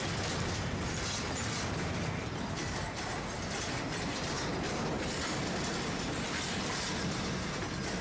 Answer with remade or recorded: recorded